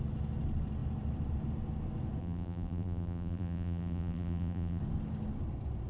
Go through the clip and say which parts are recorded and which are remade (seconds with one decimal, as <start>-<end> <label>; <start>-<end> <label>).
0.0-2.2 recorded; 2.2-4.8 remade; 4.8-5.9 recorded

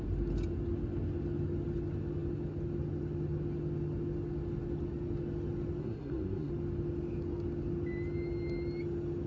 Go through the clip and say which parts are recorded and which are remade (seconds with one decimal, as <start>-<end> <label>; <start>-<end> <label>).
0.0-5.8 recorded; 5.8-6.5 remade; 6.5-9.3 recorded